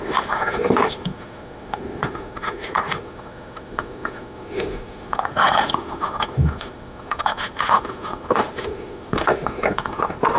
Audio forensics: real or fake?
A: fake